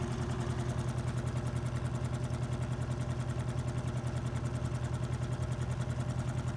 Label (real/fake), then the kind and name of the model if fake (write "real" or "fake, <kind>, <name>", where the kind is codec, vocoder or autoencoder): real